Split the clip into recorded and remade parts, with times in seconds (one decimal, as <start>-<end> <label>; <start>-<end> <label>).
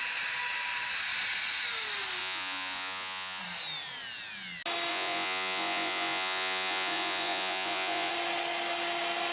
0.0-2.2 recorded; 2.2-3.4 remade; 3.4-4.9 recorded; 4.9-8.1 remade; 8.1-9.3 recorded